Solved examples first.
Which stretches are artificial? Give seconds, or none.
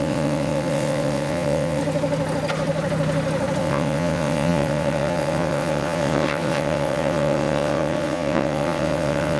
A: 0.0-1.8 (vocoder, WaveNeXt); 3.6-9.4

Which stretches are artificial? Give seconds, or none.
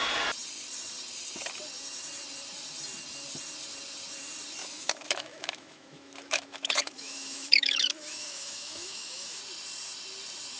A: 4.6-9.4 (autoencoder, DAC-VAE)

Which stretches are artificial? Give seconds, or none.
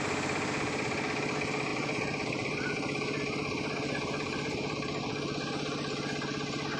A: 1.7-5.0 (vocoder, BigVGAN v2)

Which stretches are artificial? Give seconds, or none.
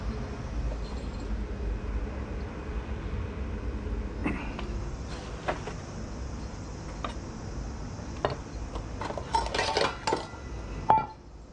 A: none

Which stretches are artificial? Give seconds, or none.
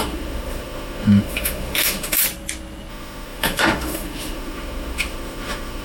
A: 0.0-2.2 (autoencoder, DAC-VAE); 2.9-5.8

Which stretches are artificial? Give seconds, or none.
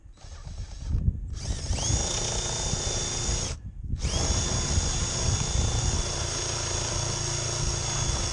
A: none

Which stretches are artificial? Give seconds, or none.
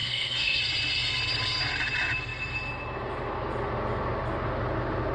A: 0.0-0.6 (codec, SNAC)